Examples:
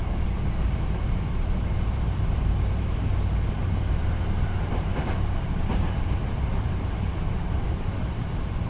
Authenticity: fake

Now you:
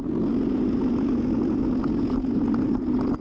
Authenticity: real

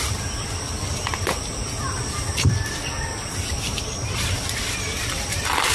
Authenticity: real